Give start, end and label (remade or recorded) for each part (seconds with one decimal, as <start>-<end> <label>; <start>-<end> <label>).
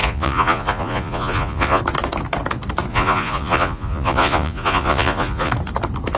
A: 0.0-1.8 remade; 1.8-2.9 recorded; 2.9-5.5 remade; 5.5-6.2 recorded